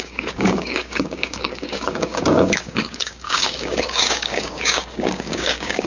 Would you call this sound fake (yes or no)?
yes